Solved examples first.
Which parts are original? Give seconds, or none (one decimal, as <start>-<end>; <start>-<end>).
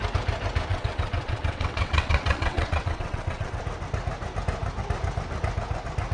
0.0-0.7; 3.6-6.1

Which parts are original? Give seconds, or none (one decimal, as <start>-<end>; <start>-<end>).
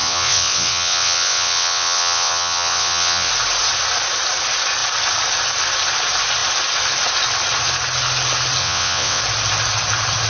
3.3-8.6; 9.2-10.3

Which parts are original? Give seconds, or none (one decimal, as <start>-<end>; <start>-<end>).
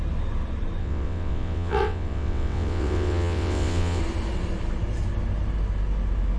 0.0-0.8; 4.0-6.4